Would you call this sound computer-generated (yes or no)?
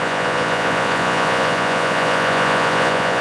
yes